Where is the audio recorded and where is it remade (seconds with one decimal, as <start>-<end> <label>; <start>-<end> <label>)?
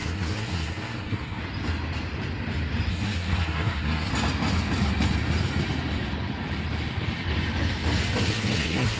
0.0-1.4 remade; 1.4-2.9 recorded; 2.9-4.1 remade; 4.1-8.3 recorded; 8.3-9.0 remade